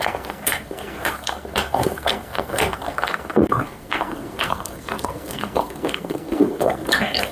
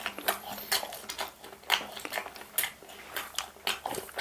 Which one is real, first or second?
second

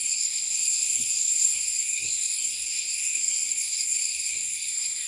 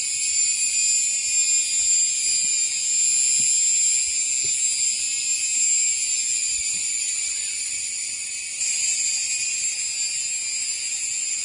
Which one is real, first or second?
second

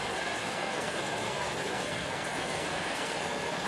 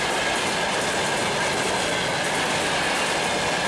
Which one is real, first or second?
second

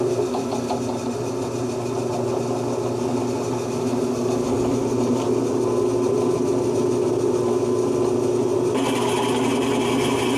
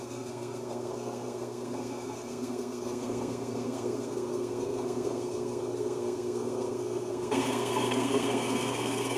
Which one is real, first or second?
first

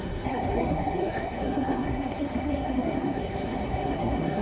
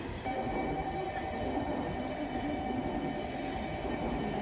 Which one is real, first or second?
second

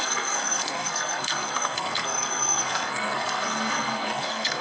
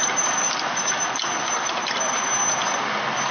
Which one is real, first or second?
second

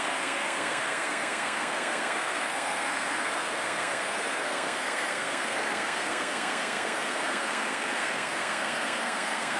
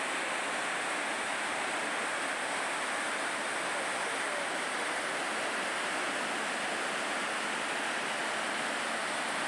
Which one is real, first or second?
second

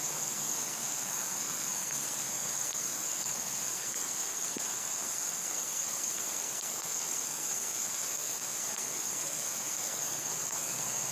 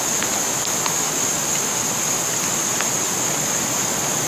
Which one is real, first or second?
second